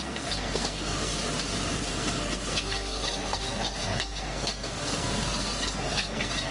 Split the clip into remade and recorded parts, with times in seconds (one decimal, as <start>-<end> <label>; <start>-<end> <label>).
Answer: 0.0-1.1 remade; 1.1-1.9 recorded; 1.9-6.5 remade